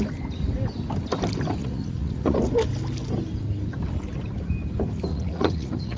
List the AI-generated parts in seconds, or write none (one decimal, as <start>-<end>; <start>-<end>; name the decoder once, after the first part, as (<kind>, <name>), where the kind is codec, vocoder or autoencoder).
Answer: 1.6-2.4 (vocoder, Vocos); 5.1-6.0